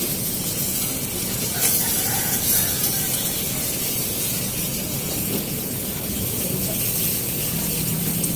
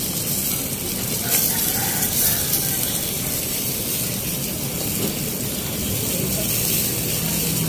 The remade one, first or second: first